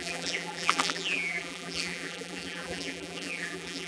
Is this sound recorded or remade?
remade